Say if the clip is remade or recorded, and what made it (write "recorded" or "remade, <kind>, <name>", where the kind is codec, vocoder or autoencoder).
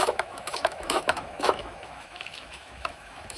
remade, autoencoder, DAC-VAE